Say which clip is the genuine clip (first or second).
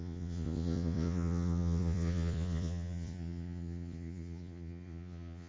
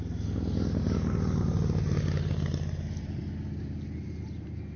second